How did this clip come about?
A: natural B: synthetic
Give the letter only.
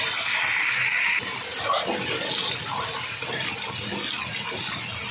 A